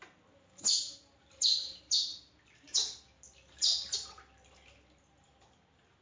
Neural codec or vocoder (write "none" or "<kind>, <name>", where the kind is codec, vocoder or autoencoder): none